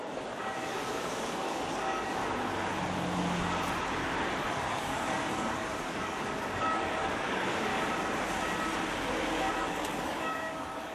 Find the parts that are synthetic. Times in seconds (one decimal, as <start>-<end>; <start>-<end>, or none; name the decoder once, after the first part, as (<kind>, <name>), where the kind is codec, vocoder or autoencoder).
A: 0.0-2.2 (codec, DAC); 4.5-7.7; 9.5-10.9